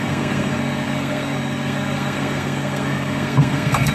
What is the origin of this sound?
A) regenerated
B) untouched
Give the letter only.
A